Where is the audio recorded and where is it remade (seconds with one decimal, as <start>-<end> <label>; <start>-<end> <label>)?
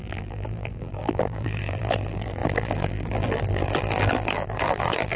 0.0-5.2 remade